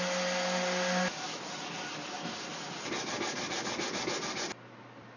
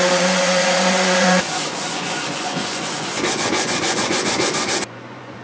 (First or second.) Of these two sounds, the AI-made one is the second